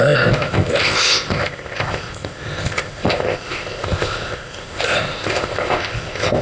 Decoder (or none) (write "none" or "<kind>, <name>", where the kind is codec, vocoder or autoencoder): codec, ZipCodec